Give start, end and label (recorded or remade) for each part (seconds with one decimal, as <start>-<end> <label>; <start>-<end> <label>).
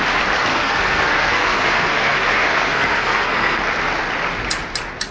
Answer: 0.0-0.5 recorded; 0.5-3.6 remade; 3.6-5.1 recorded